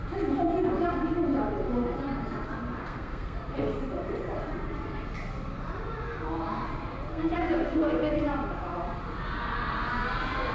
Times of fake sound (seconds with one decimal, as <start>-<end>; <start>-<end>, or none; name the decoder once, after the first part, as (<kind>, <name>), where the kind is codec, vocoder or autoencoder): 2.8-3.8 (codec, SNAC); 7.1-8.2